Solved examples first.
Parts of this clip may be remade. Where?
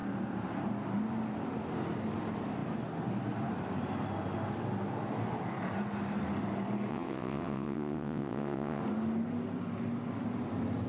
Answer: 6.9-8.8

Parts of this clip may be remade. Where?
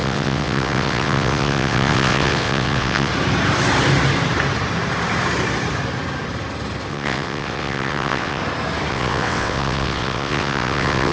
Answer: 0.0-3.1; 6.9-8.4; 8.9-11.1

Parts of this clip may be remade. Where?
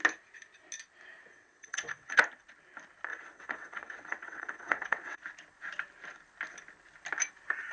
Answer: 1.3-2.2; 3.1-5.2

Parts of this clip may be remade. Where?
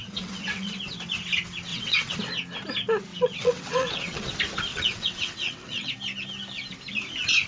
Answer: 0.0-0.7; 1.7-2.2; 3.1-4.3; 4.7-5.9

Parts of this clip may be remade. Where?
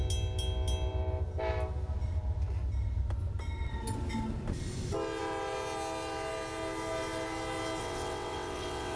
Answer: 7.8-9.0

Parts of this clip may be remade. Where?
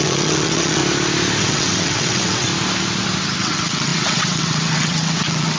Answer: 0.0-0.8; 1.4-2.5; 3.4-5.6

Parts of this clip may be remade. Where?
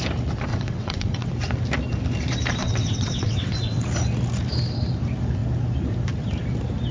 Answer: 0.5-1.3; 2.6-3.8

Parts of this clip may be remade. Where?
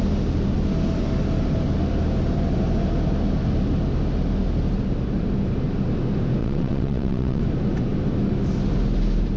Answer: 6.4-7.4